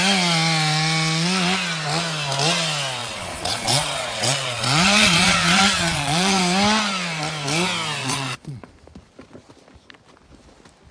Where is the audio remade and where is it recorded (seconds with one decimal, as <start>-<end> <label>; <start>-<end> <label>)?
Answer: 0.0-3.0 recorded; 3.0-6.4 remade; 6.4-8.0 recorded; 8.0-8.7 remade; 8.7-10.9 recorded

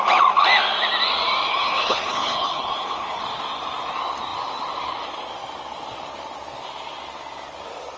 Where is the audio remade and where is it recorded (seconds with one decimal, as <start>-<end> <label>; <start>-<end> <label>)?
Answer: 0.0-1.5 recorded; 1.5-3.2 remade; 3.2-8.0 recorded

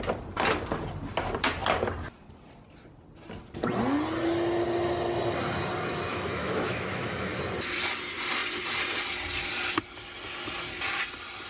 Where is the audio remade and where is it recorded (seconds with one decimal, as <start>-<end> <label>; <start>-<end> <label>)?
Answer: 0.0-6.1 recorded; 6.1-7.4 remade; 7.4-11.5 recorded

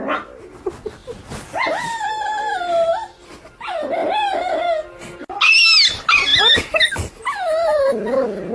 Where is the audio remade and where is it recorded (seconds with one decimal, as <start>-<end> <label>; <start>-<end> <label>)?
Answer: 0.0-8.5 recorded

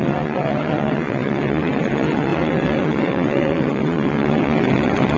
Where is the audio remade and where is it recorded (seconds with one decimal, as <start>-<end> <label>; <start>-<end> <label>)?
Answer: 0.0-5.2 remade

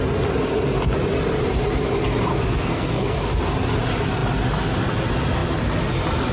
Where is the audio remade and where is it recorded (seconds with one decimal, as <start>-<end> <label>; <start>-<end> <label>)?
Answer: 0.0-2.3 recorded; 2.3-3.3 remade; 3.3-6.3 recorded

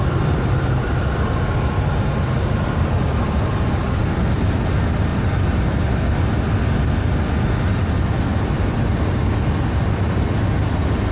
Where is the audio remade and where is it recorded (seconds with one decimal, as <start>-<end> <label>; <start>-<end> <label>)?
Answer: 0.0-11.1 recorded